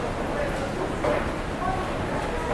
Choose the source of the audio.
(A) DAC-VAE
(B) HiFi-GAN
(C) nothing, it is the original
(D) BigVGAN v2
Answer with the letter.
C